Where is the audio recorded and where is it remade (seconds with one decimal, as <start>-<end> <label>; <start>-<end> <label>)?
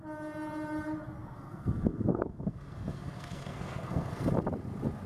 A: 0.0-1.2 recorded; 1.2-4.3 remade; 4.3-5.1 recorded